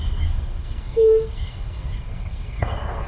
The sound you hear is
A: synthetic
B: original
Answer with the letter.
A